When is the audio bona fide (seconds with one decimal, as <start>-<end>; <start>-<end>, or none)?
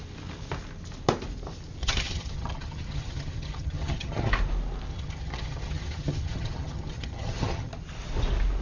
0.0-1.8; 4.3-4.9; 7.7-8.6